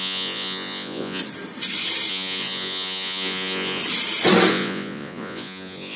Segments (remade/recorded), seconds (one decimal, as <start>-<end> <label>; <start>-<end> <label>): 0.0-1.2 remade; 1.2-2.1 recorded; 2.1-3.8 remade; 3.8-4.5 recorded; 4.5-6.0 remade